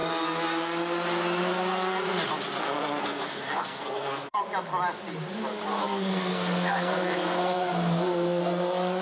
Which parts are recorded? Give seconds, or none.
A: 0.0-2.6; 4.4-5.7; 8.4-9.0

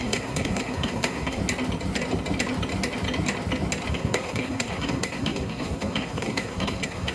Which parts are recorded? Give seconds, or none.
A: 1.4-3.9

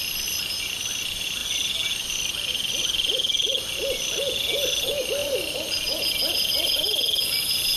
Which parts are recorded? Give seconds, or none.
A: 0.0-7.8

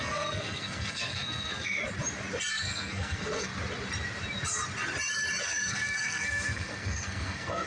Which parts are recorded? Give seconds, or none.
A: 1.8-2.5; 3.5-5.4